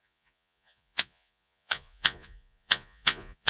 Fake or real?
fake